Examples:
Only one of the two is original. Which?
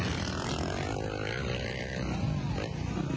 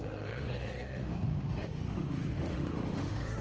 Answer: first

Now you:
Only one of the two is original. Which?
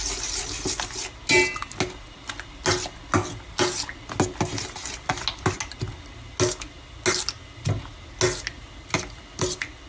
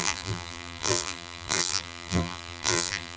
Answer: first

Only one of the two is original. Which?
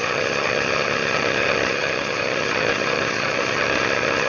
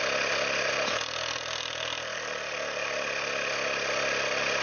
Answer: second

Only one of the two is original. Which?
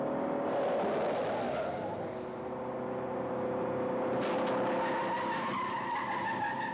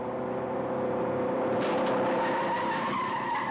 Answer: first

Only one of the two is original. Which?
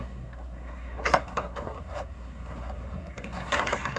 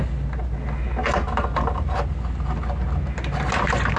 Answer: second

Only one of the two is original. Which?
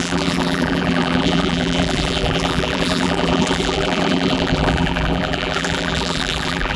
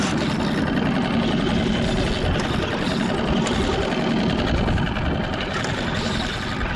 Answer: second